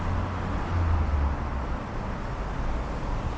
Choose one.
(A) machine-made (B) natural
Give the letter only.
B